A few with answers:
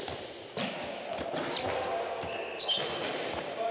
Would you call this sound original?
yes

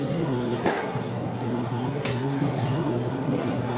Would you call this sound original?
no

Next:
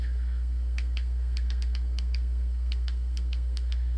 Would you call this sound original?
no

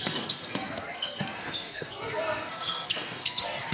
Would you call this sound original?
no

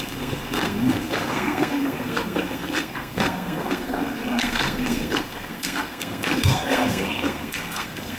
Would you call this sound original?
no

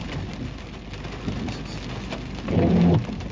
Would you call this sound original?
yes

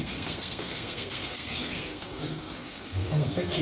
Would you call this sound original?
no